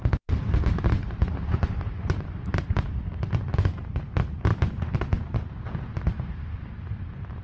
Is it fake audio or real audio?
fake